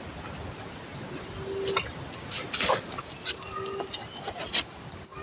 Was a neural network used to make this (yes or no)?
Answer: no